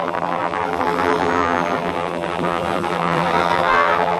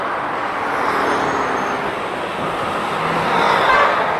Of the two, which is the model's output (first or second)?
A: first